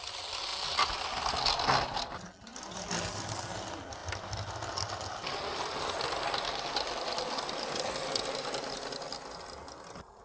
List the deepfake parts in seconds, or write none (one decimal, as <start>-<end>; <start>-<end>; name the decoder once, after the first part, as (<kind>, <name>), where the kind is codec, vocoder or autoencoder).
none